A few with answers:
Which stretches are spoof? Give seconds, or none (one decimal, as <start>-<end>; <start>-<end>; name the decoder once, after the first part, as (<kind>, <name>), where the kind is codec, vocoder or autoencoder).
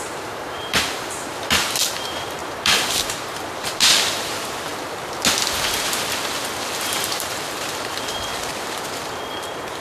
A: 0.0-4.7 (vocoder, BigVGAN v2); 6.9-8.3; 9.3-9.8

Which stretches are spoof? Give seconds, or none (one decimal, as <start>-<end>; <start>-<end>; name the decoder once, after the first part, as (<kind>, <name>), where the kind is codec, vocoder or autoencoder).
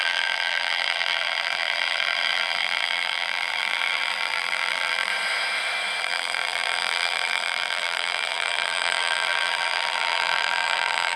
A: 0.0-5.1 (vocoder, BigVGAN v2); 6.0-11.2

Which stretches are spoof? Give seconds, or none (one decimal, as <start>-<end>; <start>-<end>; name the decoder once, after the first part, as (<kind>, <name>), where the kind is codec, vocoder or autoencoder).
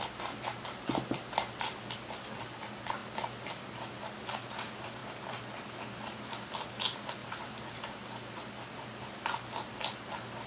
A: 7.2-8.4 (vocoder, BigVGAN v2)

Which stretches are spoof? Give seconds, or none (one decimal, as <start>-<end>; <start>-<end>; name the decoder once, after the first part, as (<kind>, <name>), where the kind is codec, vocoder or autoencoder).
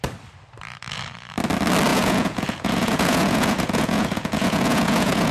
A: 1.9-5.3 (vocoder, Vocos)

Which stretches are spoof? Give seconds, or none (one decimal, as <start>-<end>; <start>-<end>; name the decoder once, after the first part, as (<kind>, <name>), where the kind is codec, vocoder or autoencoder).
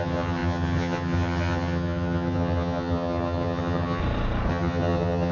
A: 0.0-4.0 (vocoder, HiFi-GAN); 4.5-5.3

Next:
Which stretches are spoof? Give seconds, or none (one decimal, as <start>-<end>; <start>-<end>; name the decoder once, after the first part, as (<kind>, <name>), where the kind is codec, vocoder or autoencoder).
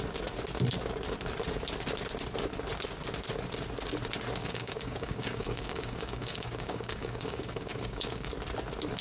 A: 4.4-8.3 (codec, DAC)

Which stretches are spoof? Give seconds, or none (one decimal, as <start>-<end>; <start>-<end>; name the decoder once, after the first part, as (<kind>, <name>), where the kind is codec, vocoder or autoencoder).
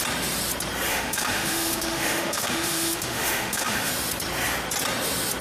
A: 0.9-3.9 (autoencoder, DAC-VAE)